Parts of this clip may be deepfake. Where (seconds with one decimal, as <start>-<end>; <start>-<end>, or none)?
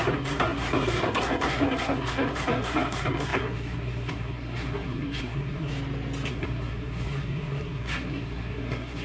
0.0-5.7; 6.3-9.0